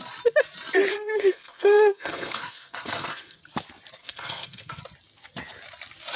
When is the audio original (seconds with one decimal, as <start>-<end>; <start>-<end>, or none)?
0.0-0.9; 3.4-4.0; 4.8-6.2